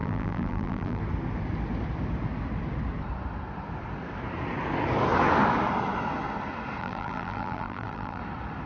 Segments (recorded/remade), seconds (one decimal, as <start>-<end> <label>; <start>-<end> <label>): 0.0-1.0 remade; 1.0-6.8 recorded; 6.8-8.2 remade; 8.2-8.7 recorded